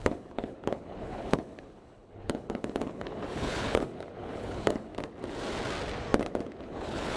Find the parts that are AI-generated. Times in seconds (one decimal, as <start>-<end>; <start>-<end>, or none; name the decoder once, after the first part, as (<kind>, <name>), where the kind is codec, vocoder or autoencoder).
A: 0.0-4.9 (codec, HILCodec); 6.6-7.2